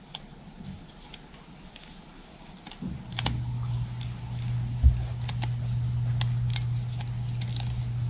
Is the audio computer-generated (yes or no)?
no